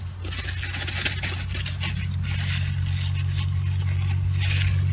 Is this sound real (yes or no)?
yes